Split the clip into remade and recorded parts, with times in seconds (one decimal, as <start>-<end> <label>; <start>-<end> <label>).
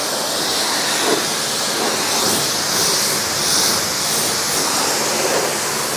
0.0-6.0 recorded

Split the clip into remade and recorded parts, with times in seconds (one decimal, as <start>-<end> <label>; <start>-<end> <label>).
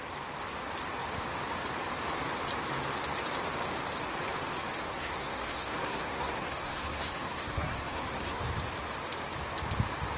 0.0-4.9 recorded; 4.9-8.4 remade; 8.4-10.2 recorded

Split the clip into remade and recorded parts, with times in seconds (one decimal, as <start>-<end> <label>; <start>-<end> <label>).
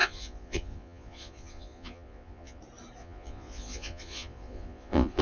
0.0-2.6 remade; 2.6-3.0 recorded; 3.0-5.2 remade